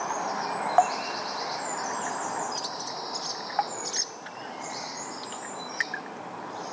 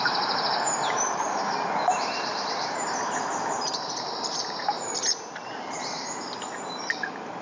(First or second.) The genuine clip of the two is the first